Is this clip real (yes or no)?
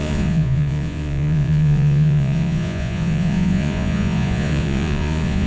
no